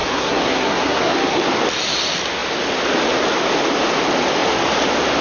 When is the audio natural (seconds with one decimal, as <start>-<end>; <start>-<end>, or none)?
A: 1.4-5.2